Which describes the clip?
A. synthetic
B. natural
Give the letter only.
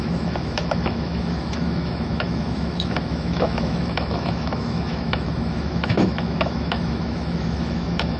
A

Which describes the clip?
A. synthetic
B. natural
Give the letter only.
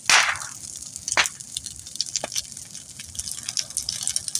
B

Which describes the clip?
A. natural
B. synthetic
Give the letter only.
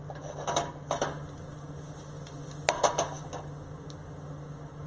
A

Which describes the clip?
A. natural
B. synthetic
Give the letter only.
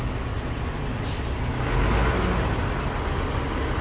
A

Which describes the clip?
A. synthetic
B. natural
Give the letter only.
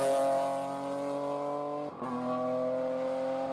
B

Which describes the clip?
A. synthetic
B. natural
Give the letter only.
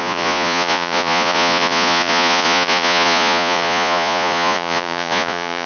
A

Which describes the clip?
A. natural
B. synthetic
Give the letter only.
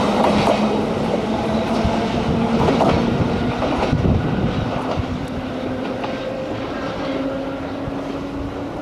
A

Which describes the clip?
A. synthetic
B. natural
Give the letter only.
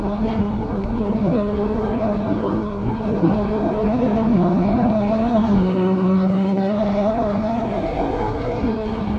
A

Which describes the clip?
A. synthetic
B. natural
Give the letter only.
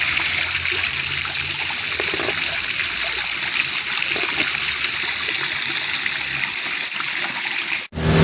B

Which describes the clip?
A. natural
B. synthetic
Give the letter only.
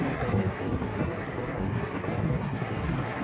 B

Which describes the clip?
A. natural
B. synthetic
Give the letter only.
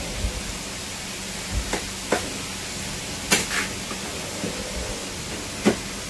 A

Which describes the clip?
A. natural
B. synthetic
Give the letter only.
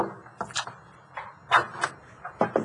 A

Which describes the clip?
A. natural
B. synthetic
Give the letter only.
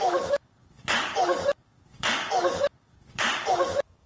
B